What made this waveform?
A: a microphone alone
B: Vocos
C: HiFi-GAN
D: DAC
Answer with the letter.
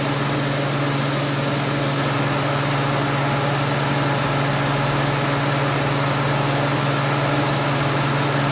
A